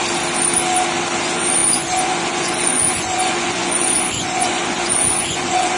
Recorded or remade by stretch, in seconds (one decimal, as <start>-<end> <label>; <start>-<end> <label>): 0.0-1.2 recorded; 1.2-5.8 remade